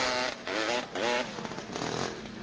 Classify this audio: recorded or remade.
recorded